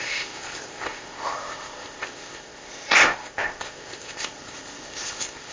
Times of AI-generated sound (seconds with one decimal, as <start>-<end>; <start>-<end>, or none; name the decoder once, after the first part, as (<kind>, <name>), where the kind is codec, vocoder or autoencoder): 0.0-5.5 (codec, ZipCodec)